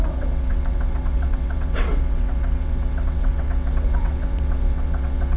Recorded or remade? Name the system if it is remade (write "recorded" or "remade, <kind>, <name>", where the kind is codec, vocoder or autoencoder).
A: remade, vocoder, WaveNeXt